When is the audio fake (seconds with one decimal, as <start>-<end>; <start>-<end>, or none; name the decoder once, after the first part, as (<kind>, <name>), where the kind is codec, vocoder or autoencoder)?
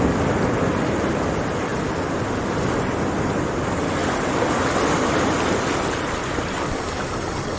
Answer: none